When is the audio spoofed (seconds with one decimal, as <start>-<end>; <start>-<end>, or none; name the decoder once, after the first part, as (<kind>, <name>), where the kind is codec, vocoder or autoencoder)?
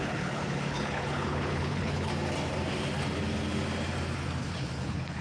0.0-2.1 (codec, HILCodec); 4.4-5.2